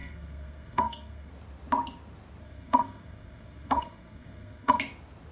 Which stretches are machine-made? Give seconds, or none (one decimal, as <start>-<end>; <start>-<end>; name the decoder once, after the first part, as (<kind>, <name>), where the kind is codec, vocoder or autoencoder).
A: 0.0-1.3 (codec, SNAC); 2.4-4.8